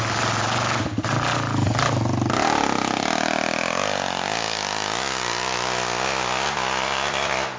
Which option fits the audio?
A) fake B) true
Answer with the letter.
B